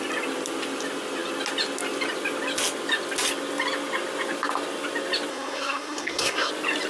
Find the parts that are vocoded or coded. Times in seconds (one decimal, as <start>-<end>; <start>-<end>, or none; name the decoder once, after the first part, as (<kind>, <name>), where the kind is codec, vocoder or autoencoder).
5.3-6.5 (codec, SNAC)